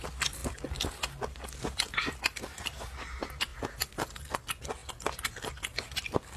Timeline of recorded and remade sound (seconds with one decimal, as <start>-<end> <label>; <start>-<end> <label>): 0.0-6.4 recorded

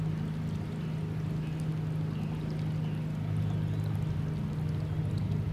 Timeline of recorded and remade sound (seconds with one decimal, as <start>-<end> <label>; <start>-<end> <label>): 0.0-5.5 recorded

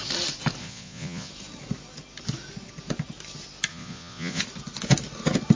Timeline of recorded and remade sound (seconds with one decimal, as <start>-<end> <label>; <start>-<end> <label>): 0.0-0.6 recorded; 0.6-1.3 remade; 1.3-3.7 recorded; 3.7-4.4 remade; 4.4-5.6 recorded

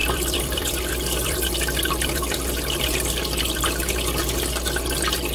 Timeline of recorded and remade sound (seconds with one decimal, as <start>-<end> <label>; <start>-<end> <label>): 0.0-3.2 remade; 3.2-5.3 recorded

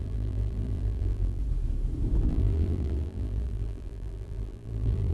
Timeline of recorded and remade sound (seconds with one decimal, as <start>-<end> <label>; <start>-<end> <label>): 0.0-1.4 remade; 1.4-2.2 recorded; 2.2-5.1 remade

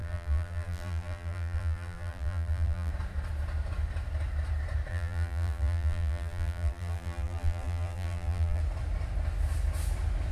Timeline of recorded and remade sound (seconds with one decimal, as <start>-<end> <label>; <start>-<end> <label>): 0.0-2.9 remade; 2.9-4.9 recorded; 4.9-8.6 remade; 8.6-10.3 recorded

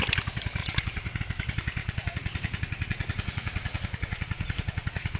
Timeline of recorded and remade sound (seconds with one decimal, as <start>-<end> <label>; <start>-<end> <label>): 0.0-0.6 recorded; 0.6-1.2 remade; 1.2-1.8 recorded; 1.8-5.2 remade

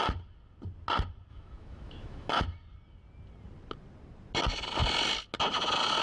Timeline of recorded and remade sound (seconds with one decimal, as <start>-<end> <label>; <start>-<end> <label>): 0.0-1.3 recorded; 1.3-2.3 remade; 2.3-6.0 recorded